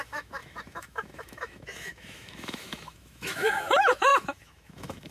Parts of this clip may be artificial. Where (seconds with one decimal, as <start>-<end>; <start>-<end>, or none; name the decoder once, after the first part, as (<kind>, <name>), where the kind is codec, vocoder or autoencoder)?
0.0-5.1 (autoencoder, DAC-VAE)

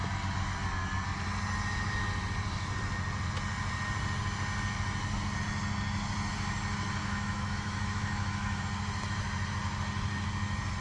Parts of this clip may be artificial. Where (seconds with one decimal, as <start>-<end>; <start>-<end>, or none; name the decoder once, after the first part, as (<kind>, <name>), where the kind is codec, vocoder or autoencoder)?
7.0-8.6 (autoencoder, DAC-VAE)

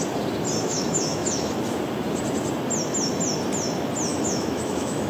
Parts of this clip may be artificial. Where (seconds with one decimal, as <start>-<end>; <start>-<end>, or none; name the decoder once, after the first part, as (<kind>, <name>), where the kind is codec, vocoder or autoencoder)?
0.6-1.5 (autoencoder, DAC-VAE); 4.1-5.1

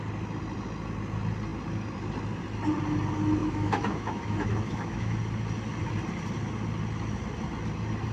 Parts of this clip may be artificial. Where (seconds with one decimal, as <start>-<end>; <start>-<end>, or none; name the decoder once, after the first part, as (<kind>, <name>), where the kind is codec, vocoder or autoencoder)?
3.4-5.2 (autoencoder, DAC-VAE)